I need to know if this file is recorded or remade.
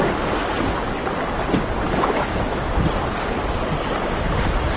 recorded